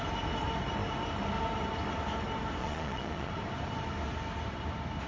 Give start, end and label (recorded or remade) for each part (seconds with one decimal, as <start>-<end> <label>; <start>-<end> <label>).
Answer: 0.0-2.6 recorded; 2.6-3.3 remade; 3.3-5.1 recorded